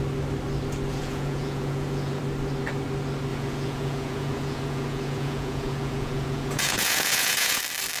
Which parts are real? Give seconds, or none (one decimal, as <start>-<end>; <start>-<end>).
0.0-0.9; 2.2-3.3; 7.6-8.0